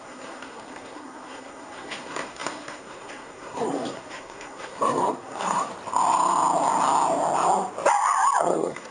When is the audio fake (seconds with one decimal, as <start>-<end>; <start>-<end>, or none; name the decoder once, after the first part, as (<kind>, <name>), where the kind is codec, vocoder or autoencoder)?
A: 0.0-5.7 (codec, SNAC); 8.4-8.9

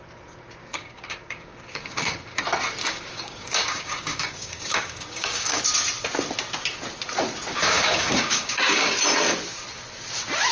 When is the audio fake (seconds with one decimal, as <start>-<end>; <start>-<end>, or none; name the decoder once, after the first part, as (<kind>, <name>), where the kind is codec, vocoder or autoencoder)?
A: 0.6-2.4 (codec, DAC); 2.8-5.6; 7.5-8.9